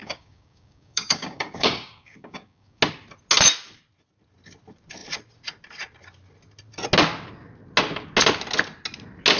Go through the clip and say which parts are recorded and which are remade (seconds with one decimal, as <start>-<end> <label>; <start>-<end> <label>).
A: 0.0-2.8 remade; 2.8-9.4 recorded